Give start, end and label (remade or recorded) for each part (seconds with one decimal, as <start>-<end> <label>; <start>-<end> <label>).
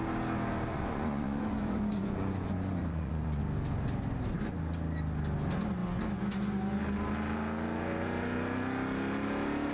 0.0-0.7 recorded; 0.7-3.4 remade; 3.4-9.7 recorded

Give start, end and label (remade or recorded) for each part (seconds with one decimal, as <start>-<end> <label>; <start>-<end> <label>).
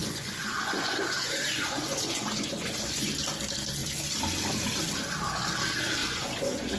0.0-3.1 remade; 3.1-6.0 recorded; 6.0-6.8 remade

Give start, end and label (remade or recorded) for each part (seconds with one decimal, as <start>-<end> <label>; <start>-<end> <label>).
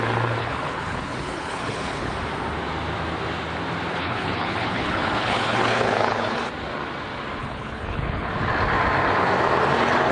0.0-0.4 recorded; 0.4-2.1 remade; 2.1-3.9 recorded; 3.9-6.5 remade; 6.5-7.4 recorded; 7.4-8.3 remade; 8.3-10.1 recorded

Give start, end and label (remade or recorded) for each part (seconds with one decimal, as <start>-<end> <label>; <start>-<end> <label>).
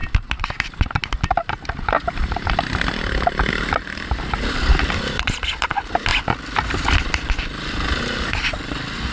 0.0-6.1 remade; 6.1-6.7 recorded; 6.7-9.1 remade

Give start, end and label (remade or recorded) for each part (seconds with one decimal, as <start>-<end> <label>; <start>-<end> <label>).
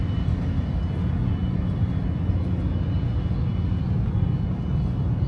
0.0-5.3 recorded